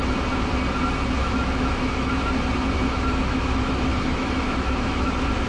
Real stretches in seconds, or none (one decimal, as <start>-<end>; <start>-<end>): 0.0-1.2; 2.1-3.2; 5.1-5.5